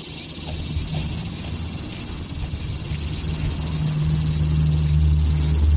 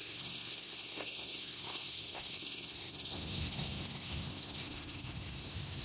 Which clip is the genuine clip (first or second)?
first